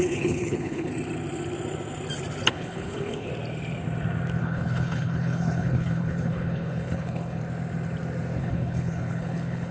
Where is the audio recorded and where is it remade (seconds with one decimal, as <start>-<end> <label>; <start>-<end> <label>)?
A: 0.0-0.9 remade; 0.9-2.5 recorded; 2.5-3.3 remade; 3.3-4.4 recorded; 4.4-7.4 remade; 7.4-8.4 recorded; 8.4-9.7 remade